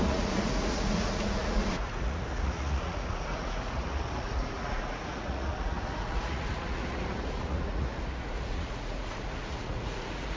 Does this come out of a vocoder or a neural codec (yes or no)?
yes